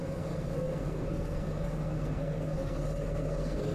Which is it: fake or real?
fake